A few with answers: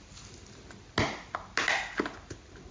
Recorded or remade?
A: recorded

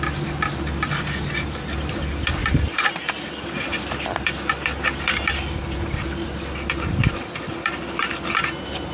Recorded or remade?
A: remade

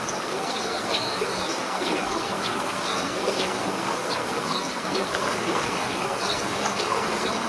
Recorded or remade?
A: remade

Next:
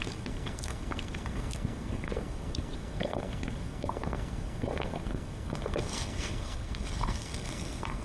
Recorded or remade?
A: remade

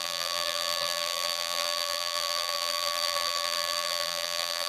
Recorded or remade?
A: remade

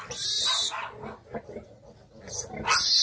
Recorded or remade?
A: recorded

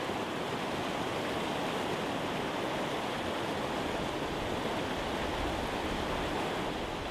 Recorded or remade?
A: recorded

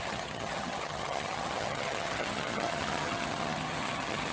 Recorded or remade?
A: remade